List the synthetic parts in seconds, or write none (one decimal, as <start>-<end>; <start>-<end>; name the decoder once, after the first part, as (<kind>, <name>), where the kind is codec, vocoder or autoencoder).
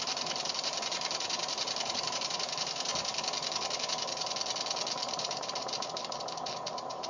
0.0-2.9 (vocoder, BigVGAN v2); 5.1-7.1